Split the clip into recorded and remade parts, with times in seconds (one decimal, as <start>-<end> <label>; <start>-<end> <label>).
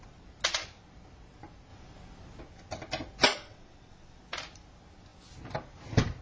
0.0-3.4 recorded; 3.4-4.2 remade; 4.2-6.2 recorded